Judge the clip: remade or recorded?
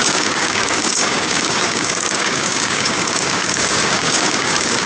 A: remade